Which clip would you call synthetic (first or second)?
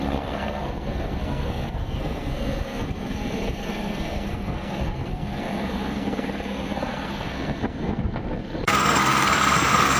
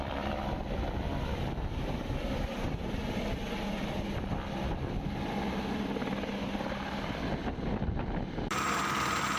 first